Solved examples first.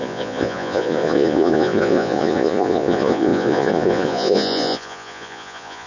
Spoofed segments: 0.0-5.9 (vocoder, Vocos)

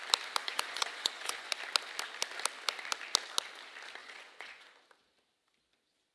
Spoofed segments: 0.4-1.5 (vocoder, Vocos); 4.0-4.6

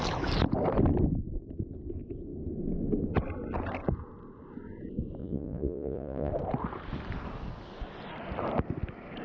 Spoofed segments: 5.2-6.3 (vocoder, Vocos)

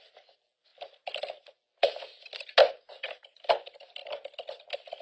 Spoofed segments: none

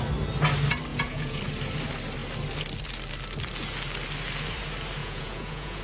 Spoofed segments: 0.9-1.4 (vocoder, Vocos); 5.0-5.8

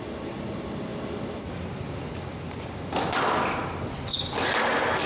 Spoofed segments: none

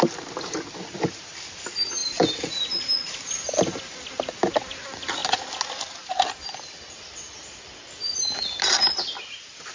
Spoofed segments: none